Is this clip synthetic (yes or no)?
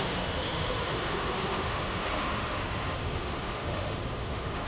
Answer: yes